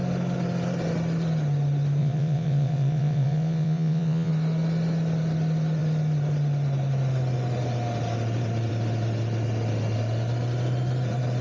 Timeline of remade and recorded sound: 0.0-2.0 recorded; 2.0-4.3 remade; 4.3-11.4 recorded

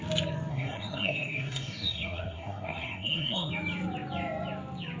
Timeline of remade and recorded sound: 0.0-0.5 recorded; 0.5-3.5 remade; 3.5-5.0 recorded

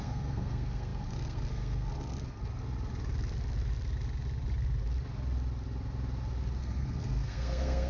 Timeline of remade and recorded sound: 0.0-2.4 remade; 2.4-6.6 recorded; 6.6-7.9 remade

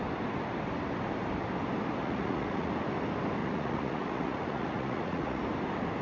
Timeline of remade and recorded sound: 0.0-2.0 recorded; 2.0-2.7 remade; 2.7-3.4 recorded; 3.4-5.4 remade; 5.4-6.0 recorded

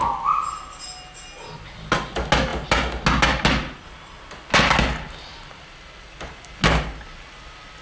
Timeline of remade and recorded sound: 0.0-7.8 recorded

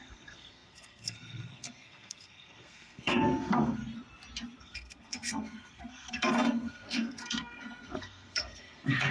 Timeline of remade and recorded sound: 0.0-3.8 remade; 3.8-4.6 recorded; 4.6-9.1 remade